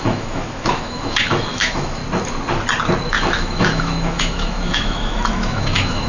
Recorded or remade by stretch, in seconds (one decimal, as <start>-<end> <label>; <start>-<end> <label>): 0.0-2.0 remade; 2.0-3.1 recorded; 3.1-6.1 remade